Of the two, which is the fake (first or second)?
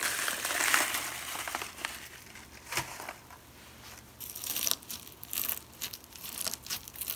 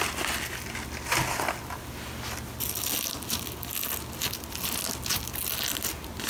first